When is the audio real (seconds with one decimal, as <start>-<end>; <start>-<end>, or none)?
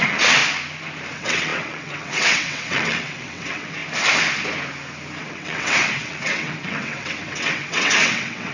0.4-1.1; 3.8-5.2